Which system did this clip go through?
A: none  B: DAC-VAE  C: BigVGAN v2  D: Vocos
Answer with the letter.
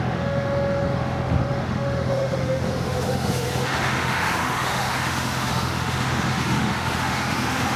B